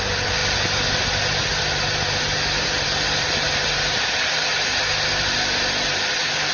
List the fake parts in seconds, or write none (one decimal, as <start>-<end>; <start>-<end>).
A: none